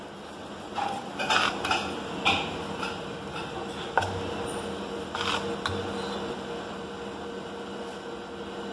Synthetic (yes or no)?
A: no